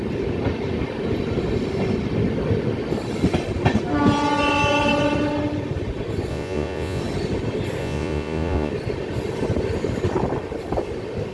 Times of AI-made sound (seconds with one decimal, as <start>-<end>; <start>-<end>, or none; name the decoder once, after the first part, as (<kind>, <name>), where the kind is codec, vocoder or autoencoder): 6.3-7.0 (vocoder, Vocos); 7.8-8.7